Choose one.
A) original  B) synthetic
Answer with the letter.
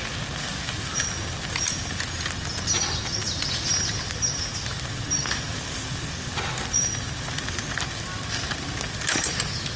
A